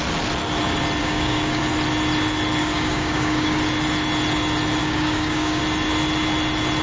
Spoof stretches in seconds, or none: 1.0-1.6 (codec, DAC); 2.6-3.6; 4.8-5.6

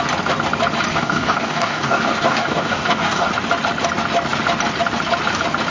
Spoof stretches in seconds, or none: 0.9-3.3 (codec, DAC)